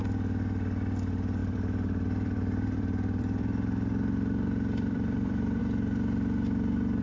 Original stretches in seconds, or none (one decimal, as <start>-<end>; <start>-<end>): 0.0-1.4; 5.6-7.0